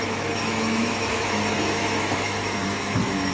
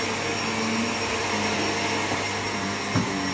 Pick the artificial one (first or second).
first